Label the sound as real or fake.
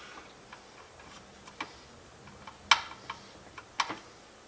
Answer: real